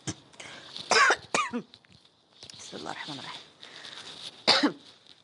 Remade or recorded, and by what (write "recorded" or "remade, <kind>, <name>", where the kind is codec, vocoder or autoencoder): recorded